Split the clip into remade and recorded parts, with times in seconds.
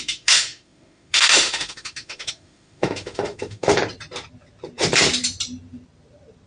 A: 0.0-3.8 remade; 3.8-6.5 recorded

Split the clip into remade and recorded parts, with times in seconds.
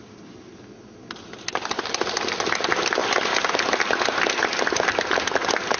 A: 0.0-5.8 recorded